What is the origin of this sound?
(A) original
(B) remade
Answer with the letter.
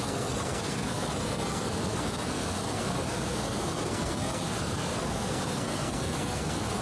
B